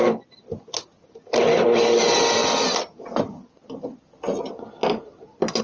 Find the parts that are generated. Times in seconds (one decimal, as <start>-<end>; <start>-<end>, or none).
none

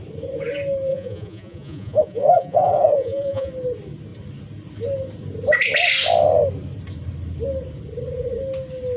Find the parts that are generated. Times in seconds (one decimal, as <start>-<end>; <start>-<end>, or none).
0.9-3.5

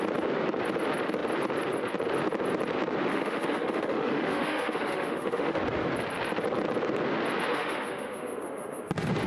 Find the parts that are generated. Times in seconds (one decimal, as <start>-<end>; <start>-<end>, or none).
3.1-5.6; 7.5-8.9

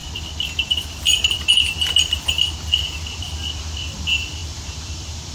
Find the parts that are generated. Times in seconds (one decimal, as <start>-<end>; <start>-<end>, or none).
none

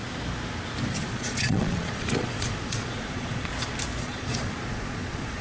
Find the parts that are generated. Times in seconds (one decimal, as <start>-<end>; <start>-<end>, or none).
1.1-3.5; 4.0-5.4